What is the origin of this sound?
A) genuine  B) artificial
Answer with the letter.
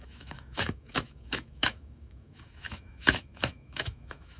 B